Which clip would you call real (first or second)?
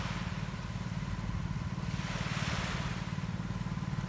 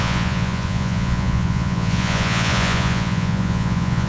first